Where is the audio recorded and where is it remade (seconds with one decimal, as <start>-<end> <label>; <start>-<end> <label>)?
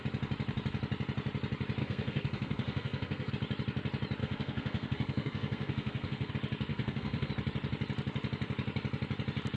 0.0-1.8 recorded; 1.8-3.3 remade; 3.3-4.2 recorded; 4.2-6.3 remade; 6.3-6.7 recorded; 6.7-7.3 remade; 7.3-9.6 recorded